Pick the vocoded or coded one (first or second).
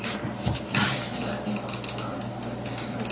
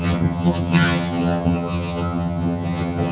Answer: second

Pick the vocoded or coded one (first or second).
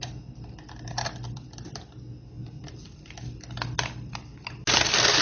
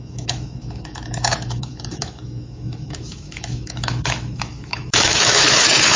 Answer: second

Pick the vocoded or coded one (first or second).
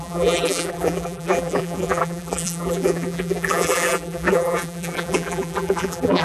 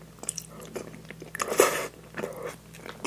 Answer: first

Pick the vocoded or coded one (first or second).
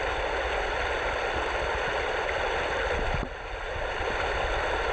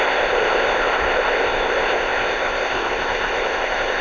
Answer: second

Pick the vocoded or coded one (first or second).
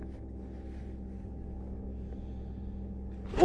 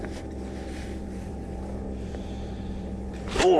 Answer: second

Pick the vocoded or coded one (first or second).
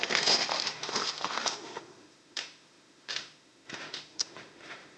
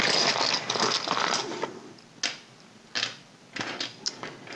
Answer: first